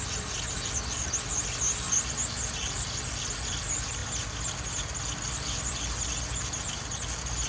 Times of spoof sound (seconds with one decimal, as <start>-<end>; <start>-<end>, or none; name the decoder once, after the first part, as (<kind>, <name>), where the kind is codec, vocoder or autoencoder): none